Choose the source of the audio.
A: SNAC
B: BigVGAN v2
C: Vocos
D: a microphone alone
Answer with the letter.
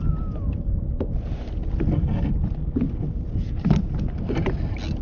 D